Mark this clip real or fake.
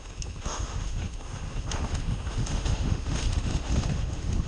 fake